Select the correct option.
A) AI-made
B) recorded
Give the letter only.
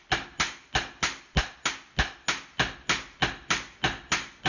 B